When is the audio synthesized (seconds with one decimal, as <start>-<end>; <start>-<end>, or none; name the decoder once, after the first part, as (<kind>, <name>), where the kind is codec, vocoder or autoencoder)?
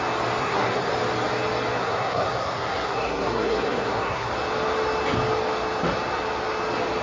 0.4-0.9 (codec, SNAC); 1.8-4.3